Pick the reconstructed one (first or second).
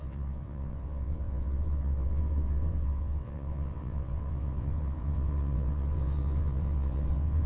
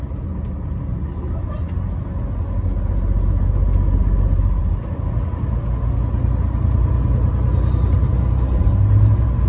first